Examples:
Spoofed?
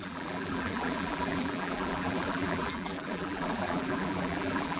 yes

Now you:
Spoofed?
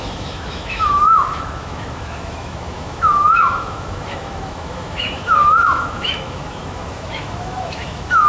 yes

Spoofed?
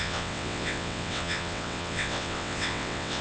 yes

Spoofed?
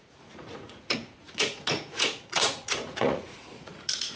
yes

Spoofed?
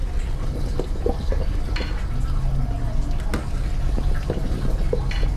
no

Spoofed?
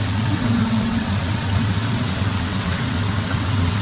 yes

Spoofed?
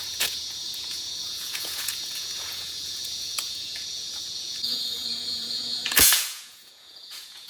yes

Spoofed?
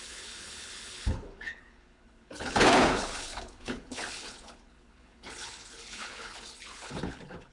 yes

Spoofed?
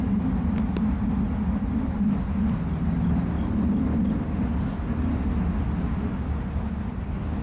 no